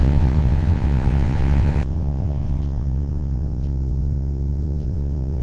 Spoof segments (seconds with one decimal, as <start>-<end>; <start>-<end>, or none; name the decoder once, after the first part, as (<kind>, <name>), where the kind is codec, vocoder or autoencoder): 0.0-5.4 (vocoder, WaveNeXt)